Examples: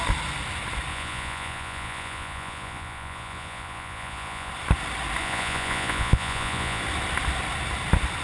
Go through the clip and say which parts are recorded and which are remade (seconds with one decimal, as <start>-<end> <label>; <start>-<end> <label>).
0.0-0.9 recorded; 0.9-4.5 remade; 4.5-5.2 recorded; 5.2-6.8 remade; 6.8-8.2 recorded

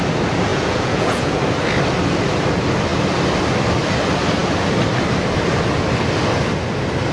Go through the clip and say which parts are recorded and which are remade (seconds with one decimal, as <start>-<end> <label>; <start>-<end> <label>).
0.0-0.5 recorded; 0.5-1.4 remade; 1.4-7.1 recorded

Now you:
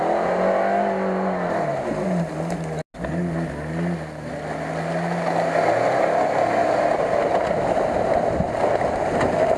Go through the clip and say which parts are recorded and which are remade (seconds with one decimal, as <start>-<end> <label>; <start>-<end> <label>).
0.0-9.6 recorded

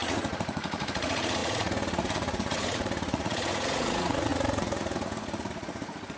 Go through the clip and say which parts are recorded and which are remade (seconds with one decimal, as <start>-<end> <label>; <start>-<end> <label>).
0.0-6.2 remade